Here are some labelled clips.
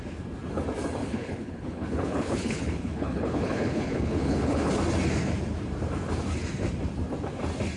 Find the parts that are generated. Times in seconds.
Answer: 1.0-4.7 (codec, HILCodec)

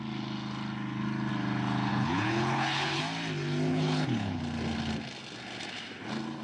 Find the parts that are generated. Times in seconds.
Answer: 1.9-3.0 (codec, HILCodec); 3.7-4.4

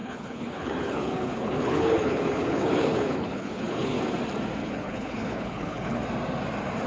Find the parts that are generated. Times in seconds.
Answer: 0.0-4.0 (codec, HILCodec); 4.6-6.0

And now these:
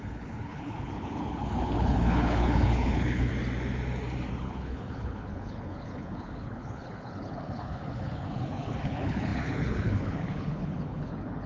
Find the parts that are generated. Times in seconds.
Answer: 0.0-3.3 (codec, HILCodec); 4.3-11.5